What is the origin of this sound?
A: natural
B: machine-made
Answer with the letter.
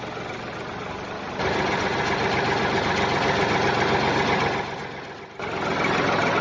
A